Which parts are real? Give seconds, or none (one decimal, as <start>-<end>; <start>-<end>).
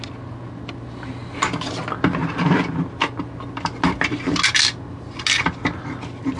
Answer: 0.0-6.4